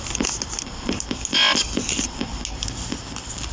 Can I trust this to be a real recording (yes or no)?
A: yes